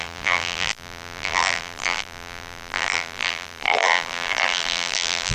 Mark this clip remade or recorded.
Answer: remade